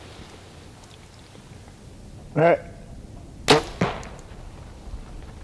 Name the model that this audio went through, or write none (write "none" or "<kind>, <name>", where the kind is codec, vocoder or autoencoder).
none